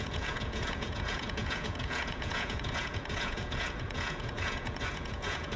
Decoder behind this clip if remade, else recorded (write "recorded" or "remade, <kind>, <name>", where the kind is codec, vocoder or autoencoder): remade, vocoder, Vocos